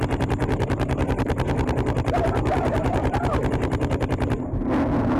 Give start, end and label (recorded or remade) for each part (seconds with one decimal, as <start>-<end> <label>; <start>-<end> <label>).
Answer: 0.0-0.4 recorded; 0.4-3.5 remade; 3.5-5.2 recorded